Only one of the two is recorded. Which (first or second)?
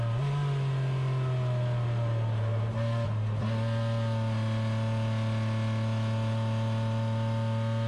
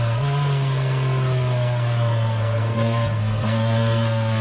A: first